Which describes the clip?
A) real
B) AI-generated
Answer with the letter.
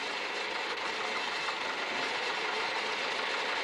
A